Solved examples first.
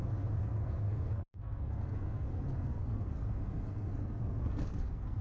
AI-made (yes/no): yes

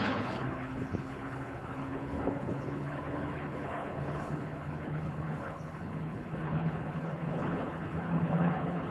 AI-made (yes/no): yes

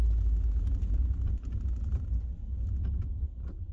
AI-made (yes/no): no